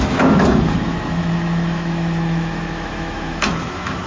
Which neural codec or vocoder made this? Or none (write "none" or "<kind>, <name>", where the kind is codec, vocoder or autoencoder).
autoencoder, DAC-VAE